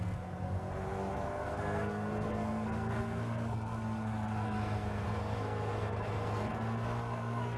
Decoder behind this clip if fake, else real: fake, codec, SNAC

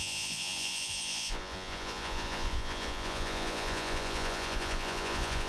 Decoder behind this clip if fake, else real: fake, vocoder, Vocos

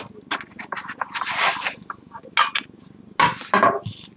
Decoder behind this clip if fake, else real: real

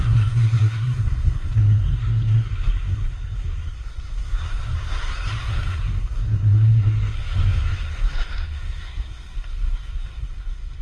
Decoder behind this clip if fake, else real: fake, codec, SNAC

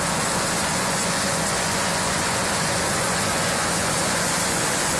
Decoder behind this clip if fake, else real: fake, vocoder, Vocos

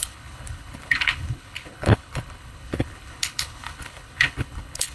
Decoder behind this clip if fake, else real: fake, codec, HILCodec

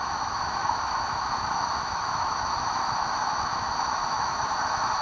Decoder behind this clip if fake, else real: fake, autoencoder, DAC-VAE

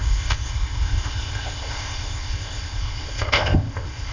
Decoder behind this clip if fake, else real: fake, codec, ZipCodec